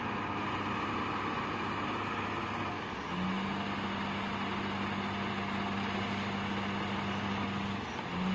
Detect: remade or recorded recorded